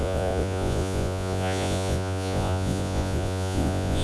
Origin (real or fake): fake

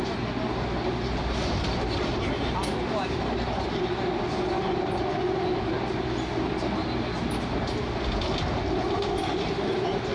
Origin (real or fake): real